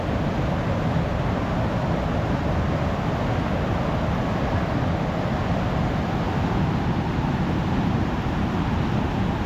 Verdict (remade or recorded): recorded